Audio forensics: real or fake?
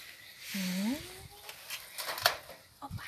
real